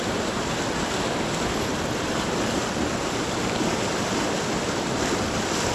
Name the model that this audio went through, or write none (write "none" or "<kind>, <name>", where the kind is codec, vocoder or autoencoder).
vocoder, BigVGAN v2